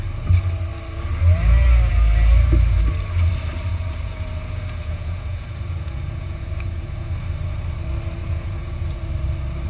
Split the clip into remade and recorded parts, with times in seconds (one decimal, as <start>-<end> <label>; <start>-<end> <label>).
0.0-3.7 recorded; 3.7-7.1 remade; 7.1-8.2 recorded; 8.2-9.0 remade; 9.0-9.7 recorded